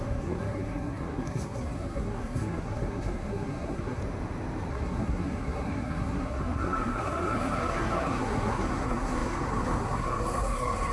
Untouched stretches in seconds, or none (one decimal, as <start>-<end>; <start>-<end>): 4.0-4.7